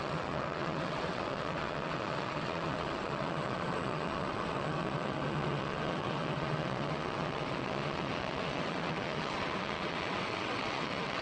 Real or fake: fake